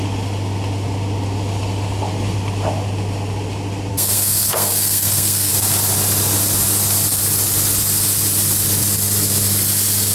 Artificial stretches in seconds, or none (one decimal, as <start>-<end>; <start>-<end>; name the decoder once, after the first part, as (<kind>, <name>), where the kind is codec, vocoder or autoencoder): 3.9-5.5 (codec, SNAC)